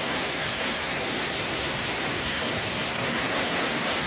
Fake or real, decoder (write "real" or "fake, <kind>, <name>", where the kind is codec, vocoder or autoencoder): fake, codec, SNAC